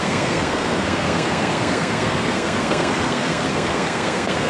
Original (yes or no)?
no